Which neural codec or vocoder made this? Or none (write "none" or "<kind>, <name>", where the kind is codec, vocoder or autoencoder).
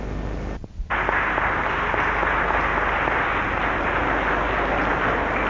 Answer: none